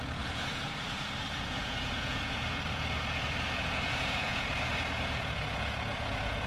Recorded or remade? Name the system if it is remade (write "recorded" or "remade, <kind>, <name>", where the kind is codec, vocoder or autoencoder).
remade, vocoder, Vocos